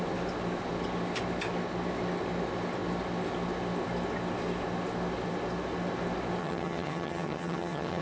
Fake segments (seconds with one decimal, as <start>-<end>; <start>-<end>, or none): 6.4-8.0